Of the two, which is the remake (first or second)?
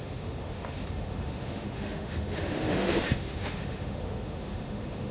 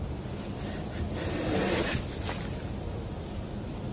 first